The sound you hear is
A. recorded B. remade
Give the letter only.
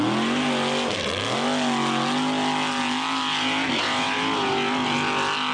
A